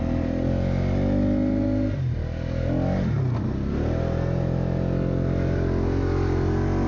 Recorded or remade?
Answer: recorded